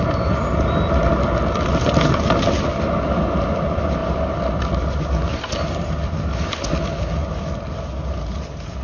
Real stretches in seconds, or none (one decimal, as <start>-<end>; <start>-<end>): 0.0-8.8